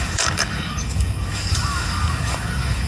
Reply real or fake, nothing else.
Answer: fake